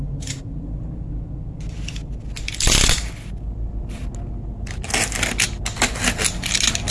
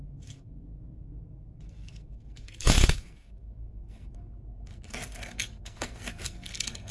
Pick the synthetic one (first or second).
second